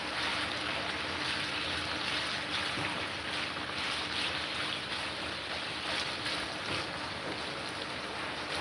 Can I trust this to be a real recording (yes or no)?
yes